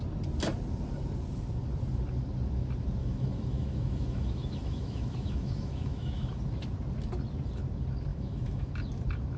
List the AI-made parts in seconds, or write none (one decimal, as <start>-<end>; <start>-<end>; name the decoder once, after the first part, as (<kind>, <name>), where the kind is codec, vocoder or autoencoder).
3.0-6.4 (autoencoder, DAC-VAE); 8.1-8.7